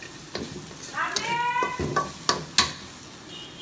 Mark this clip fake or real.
real